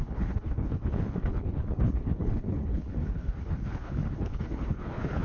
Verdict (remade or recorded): remade